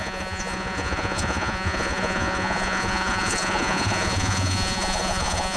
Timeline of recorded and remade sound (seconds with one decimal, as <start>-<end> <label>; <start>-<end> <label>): 0.0-5.6 remade